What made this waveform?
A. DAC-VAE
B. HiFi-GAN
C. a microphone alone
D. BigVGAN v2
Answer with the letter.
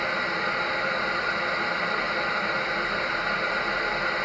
C